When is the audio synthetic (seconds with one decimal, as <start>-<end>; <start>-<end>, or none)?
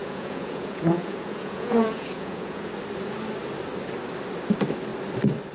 0.0-2.7